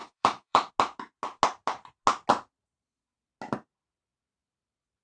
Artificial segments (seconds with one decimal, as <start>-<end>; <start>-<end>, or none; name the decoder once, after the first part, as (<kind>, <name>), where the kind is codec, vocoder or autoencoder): 0.0-0.7 (autoencoder, DAC-VAE)